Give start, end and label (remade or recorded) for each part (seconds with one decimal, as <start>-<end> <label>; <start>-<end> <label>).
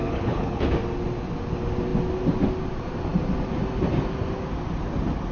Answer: 0.0-0.7 remade; 0.7-5.3 recorded